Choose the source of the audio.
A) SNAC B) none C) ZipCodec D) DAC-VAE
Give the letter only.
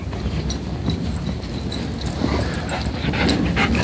B